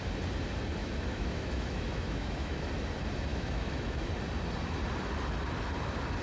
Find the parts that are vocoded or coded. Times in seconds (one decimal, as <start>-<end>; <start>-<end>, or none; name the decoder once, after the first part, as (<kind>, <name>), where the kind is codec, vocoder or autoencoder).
0.8-2.7 (autoencoder, DAC-VAE); 3.3-4.1